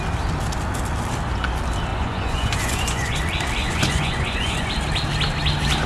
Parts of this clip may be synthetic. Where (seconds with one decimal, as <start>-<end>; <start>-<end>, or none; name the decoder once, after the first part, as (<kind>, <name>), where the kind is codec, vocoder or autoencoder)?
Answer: 1.9-3.2 (vocoder, Vocos); 3.6-4.7